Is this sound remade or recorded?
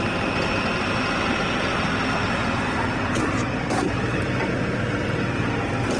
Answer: recorded